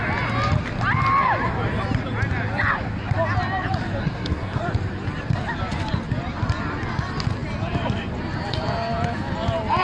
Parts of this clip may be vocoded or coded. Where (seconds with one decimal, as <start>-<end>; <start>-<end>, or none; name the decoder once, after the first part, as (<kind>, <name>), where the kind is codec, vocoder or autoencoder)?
4.0-4.6 (codec, SNAC)